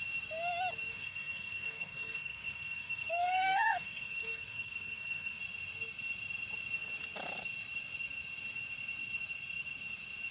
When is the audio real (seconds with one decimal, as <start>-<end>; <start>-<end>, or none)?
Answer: 0.0-0.9; 5.4-10.3